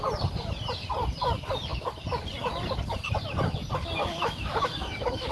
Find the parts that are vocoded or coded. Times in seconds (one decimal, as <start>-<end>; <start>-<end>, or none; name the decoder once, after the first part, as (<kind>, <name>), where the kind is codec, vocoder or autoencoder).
4.0-5.3 (autoencoder, DAC-VAE)